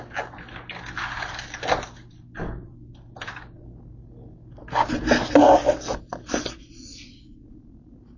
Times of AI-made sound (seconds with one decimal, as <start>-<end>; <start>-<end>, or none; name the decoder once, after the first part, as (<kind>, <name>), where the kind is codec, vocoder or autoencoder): none